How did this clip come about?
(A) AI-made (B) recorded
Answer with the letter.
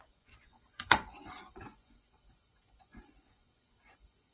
A